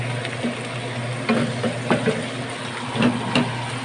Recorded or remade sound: recorded